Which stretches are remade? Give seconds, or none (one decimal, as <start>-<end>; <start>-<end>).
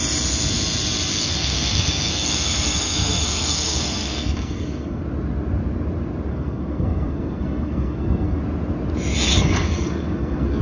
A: 1.1-5.0; 6.3-8.4; 9.3-10.6